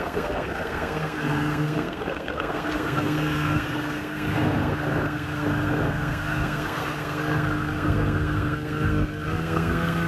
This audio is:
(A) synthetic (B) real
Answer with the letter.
A